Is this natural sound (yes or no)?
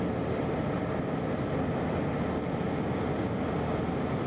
yes